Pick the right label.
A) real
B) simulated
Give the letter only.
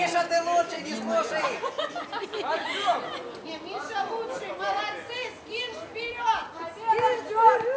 A